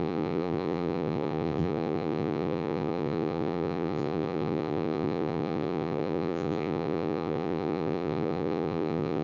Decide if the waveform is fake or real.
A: fake